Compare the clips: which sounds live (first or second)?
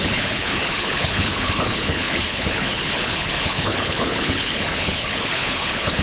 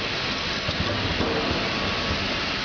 second